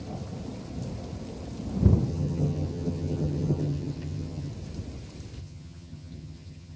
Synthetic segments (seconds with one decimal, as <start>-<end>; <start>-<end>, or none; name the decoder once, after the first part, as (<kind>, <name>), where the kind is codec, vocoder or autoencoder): 2.1-4.5 (vocoder, HiFi-GAN); 5.4-6.8